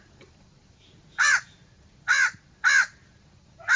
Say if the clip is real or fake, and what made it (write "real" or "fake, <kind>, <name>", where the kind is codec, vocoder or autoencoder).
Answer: fake, vocoder, BigVGAN v2